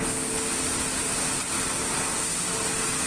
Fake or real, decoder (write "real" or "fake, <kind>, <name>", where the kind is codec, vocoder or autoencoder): real